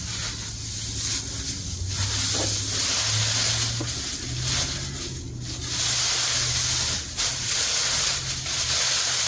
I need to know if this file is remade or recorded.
recorded